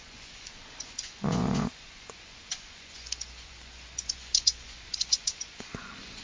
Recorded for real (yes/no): no